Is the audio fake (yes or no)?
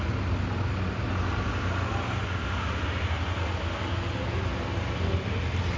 no